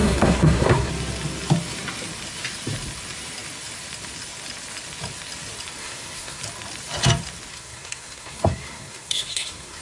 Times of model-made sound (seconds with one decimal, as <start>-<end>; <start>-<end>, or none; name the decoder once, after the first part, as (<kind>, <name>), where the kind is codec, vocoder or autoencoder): 0.0-0.9 (codec, SNAC); 5.8-6.4; 7.5-9.8